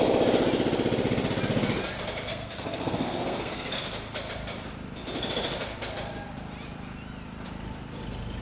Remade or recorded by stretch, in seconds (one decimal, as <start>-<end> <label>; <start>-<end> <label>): 0.0-2.3 recorded; 2.3-3.8 remade; 3.8-8.4 recorded

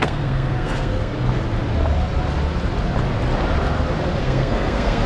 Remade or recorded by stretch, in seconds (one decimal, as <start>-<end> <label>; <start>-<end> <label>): 0.0-1.1 remade; 1.1-4.2 recorded; 4.2-5.1 remade

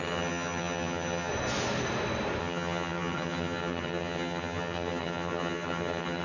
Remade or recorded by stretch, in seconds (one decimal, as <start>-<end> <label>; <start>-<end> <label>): 0.0-1.3 remade; 1.3-2.4 recorded; 2.4-6.2 remade

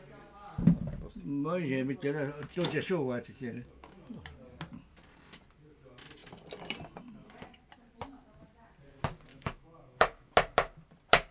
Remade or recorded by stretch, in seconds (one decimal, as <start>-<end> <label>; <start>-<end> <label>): 0.0-2.5 recorded; 2.5-4.0 remade; 4.0-9.3 recorded; 9.3-10.3 remade; 10.3-11.3 recorded

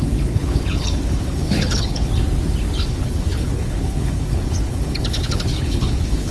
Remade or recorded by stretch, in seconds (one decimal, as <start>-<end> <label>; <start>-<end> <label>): 0.0-2.1 remade; 2.1-2.9 recorded; 2.9-6.3 remade

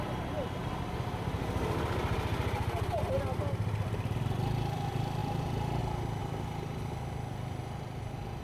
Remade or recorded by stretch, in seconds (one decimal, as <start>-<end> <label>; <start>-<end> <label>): 0.0-5.2 recorded; 5.2-5.8 remade; 5.8-8.4 recorded

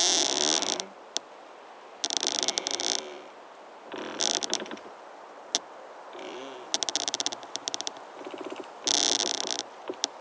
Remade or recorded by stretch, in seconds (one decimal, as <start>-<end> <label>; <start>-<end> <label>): 0.0-10.2 recorded

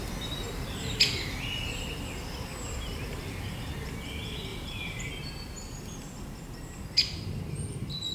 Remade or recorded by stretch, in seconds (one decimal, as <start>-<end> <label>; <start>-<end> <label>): 0.0-2.5 recorded; 2.5-3.7 remade; 3.7-4.5 recorded; 4.5-5.1 remade; 5.1-7.0 recorded; 7.0-8.1 remade